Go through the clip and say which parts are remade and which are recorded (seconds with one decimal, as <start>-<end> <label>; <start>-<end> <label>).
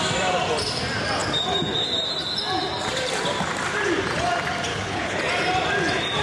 0.0-4.7 recorded; 4.7-5.2 remade; 5.2-6.2 recorded